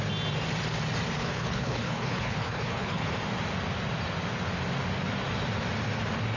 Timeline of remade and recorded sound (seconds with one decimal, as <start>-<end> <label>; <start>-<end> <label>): 0.0-1.2 recorded; 1.2-3.1 remade; 3.1-6.4 recorded